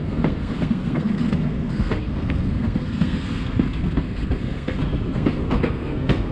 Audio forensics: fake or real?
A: fake